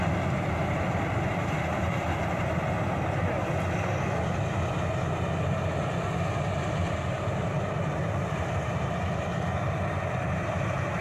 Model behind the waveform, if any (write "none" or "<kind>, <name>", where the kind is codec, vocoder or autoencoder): none